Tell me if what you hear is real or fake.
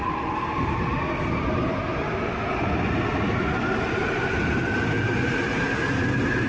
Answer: real